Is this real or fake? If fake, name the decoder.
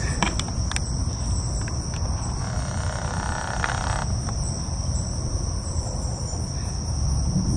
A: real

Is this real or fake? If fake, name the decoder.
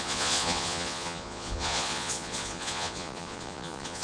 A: fake, vocoder, Vocos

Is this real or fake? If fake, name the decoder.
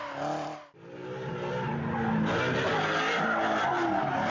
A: real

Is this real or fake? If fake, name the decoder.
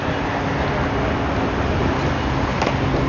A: real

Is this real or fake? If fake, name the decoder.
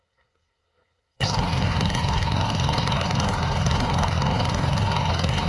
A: fake, codec, SNAC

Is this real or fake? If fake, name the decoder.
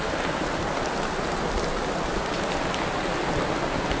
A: real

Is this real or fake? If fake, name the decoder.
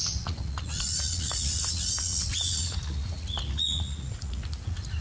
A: fake, vocoder, Vocos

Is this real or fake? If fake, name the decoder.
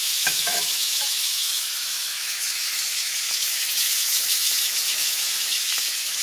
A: fake, autoencoder, DAC-VAE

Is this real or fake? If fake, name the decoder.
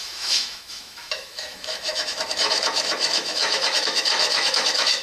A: fake, autoencoder, DAC-VAE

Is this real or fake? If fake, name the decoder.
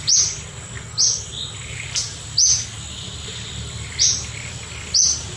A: real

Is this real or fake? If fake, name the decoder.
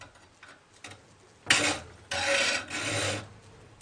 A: real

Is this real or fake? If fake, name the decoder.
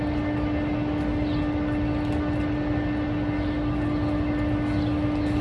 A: real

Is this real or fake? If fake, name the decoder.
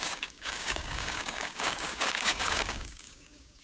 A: fake, codec, DAC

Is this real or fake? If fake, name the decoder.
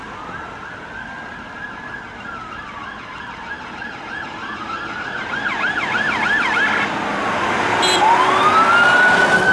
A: real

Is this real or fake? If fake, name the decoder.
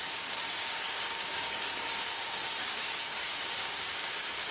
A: fake, codec, DAC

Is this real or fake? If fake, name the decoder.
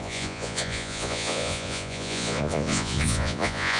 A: fake, vocoder, Vocos